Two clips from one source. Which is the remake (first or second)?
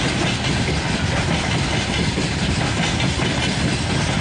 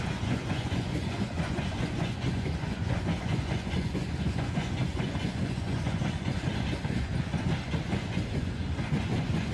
second